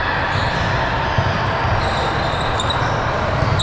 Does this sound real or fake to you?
real